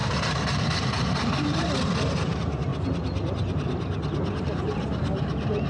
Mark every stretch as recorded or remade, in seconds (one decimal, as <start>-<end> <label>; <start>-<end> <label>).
0.0-2.7 remade; 2.7-4.4 recorded; 4.4-5.7 remade